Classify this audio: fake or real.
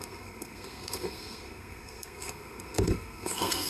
fake